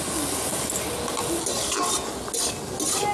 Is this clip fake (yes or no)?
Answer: no